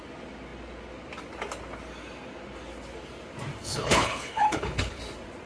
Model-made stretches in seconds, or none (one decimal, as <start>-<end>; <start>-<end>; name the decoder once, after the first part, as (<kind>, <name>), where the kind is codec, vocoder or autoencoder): 3.6-5.0 (codec, HILCodec)